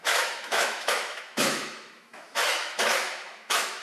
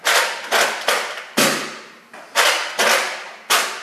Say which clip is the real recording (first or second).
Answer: second